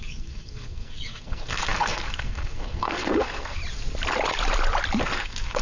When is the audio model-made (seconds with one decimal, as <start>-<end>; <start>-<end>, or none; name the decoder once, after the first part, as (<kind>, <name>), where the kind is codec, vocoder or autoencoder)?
0.0-3.6 (codec, SNAC); 5.0-5.6